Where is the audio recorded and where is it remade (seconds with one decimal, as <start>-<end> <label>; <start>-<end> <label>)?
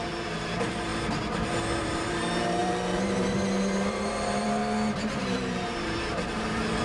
0.0-0.9 remade; 0.9-1.8 recorded; 1.8-4.6 remade; 4.6-5.2 recorded; 5.2-6.8 remade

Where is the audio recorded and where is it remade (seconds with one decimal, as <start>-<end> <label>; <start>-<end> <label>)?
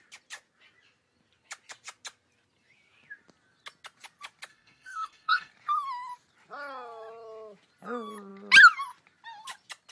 0.0-4.5 recorded; 4.5-5.5 remade; 5.5-9.9 recorded